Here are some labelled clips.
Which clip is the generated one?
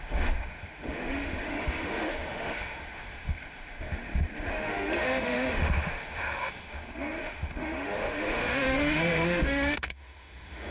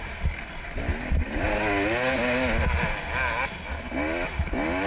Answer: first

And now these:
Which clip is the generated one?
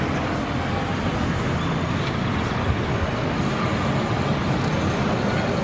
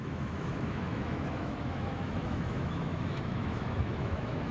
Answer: second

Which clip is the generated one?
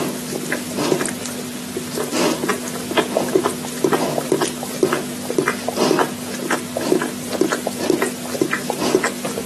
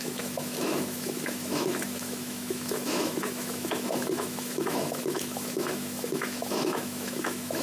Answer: second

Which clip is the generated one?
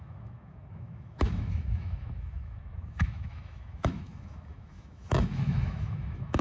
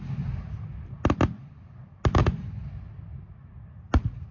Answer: first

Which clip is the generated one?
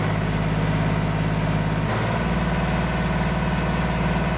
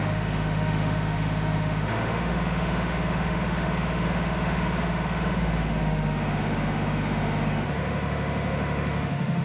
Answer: second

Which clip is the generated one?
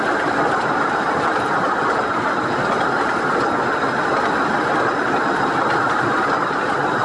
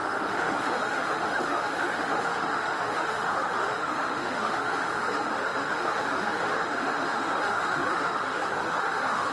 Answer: second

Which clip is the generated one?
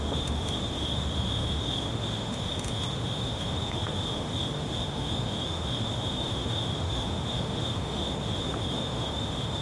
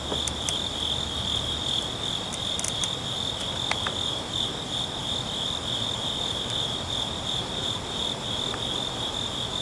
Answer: first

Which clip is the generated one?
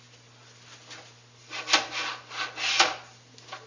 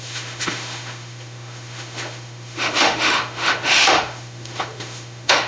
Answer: second